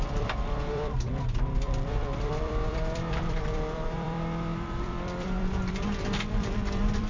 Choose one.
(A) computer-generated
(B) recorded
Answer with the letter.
A